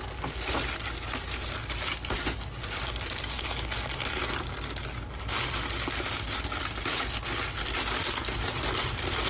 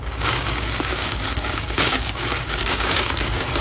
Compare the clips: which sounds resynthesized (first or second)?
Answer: second